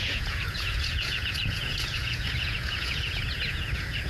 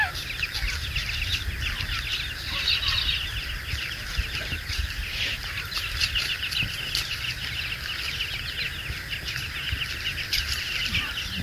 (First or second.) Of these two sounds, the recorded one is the second